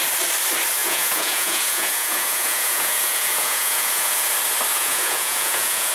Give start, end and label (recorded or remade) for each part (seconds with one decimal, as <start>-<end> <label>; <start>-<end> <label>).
0.0-0.8 recorded; 0.8-4.3 remade; 4.3-4.7 recorded; 4.7-5.9 remade